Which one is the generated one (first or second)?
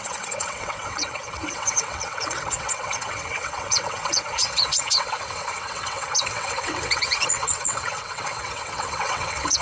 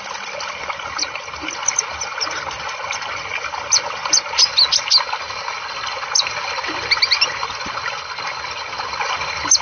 first